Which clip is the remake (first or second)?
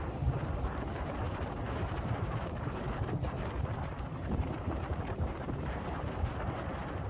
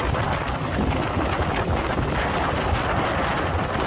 first